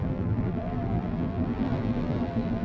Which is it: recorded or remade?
remade